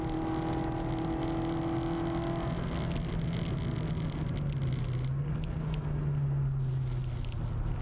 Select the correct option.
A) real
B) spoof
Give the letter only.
A